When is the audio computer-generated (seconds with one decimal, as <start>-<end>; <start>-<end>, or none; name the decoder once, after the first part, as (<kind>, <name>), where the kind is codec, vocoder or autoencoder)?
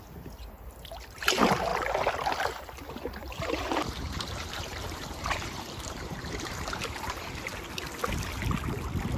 3.2-7.5 (vocoder, BigVGAN v2)